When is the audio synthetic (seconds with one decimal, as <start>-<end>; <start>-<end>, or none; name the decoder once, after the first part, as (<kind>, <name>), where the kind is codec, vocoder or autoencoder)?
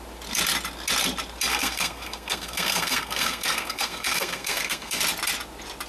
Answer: 1.5-5.0 (codec, SNAC)